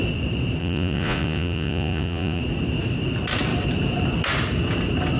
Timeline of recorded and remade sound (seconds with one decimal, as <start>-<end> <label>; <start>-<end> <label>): 0.0-0.6 recorded; 0.6-2.4 remade; 2.4-5.2 recorded